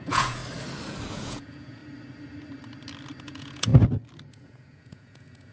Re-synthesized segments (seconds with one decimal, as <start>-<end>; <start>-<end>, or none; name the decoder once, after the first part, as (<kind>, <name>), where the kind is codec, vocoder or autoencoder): 0.0-0.4 (vocoder, Vocos); 1.1-1.8; 3.2-3.7; 4.3-5.5